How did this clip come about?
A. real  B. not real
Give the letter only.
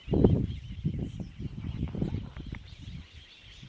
A